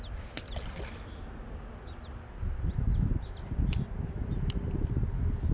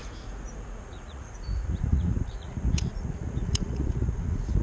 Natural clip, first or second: first